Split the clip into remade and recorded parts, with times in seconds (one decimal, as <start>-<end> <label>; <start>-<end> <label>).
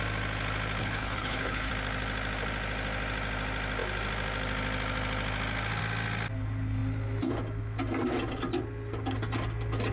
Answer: 0.0-0.8 recorded; 0.8-1.7 remade; 1.7-9.9 recorded